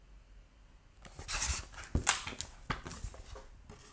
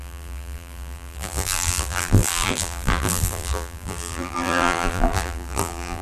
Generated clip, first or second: second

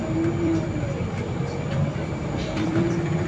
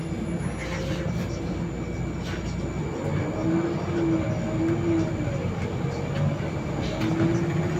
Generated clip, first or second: first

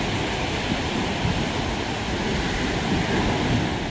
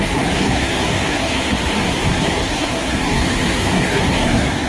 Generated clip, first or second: second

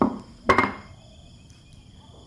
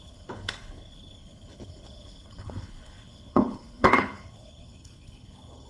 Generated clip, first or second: second